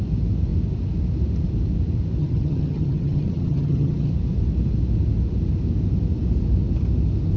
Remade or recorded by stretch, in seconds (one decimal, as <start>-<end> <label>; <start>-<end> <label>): 0.0-2.2 recorded; 2.2-4.1 remade; 4.1-7.4 recorded